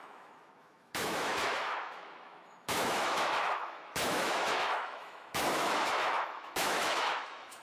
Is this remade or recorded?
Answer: remade